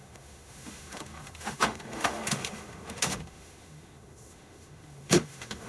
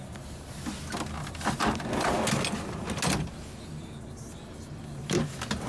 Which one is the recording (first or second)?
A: second